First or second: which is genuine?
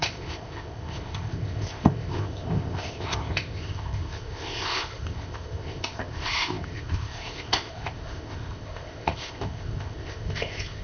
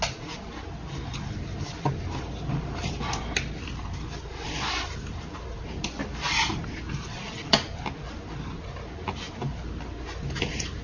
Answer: second